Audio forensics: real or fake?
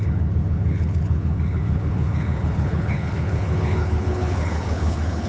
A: fake